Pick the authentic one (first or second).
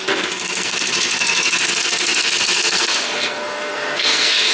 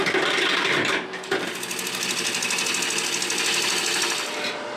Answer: second